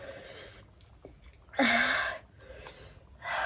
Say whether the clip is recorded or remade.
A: recorded